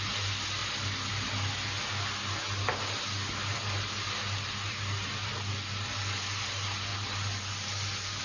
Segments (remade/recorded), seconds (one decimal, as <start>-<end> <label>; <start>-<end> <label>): 0.0-8.2 recorded